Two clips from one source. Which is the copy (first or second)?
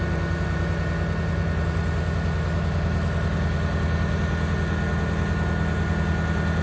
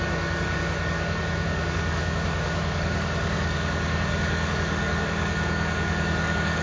second